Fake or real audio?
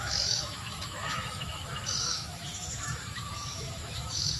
fake